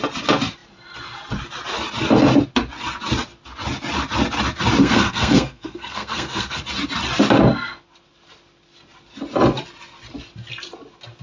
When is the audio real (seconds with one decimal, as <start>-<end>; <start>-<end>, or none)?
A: 0.0-4.8; 6.6-11.2